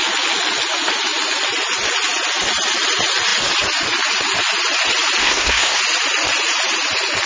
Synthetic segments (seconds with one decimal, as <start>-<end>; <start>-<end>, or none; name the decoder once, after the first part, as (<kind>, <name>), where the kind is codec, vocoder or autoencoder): 5.2-5.8 (codec, SNAC)